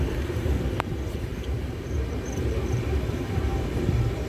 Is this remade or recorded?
remade